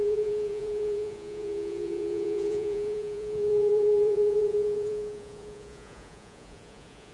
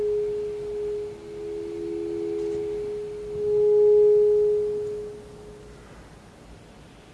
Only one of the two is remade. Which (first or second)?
first